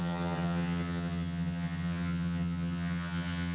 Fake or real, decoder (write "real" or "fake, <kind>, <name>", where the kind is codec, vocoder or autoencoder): fake, vocoder, HiFi-GAN